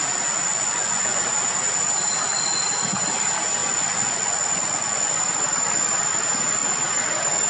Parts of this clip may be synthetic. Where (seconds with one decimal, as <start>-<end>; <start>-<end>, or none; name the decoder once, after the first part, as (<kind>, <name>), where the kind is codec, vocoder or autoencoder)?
0.5-1.2 (vocoder, Vocos); 3.6-5.1